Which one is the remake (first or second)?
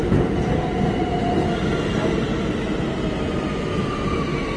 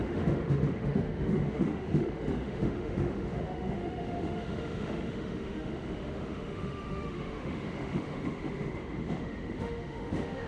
second